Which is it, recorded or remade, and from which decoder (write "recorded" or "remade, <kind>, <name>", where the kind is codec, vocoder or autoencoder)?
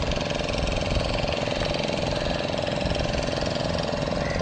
recorded